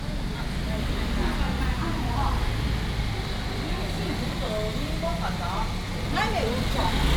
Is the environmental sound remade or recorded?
recorded